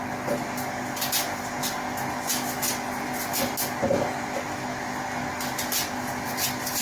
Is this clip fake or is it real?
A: real